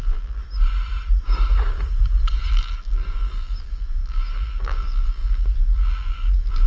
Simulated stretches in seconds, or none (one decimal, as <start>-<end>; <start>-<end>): 0.0-0.4; 2.5-6.7